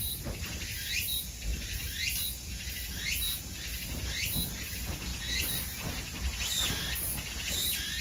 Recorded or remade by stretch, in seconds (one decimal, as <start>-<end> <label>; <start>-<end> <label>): 0.0-8.0 recorded